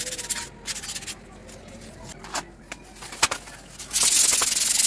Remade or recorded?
recorded